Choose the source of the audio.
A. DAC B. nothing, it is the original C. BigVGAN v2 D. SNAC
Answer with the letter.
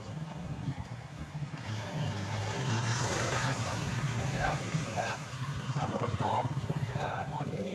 D